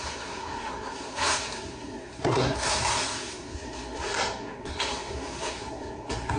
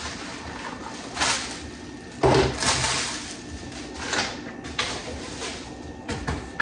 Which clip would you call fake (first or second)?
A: first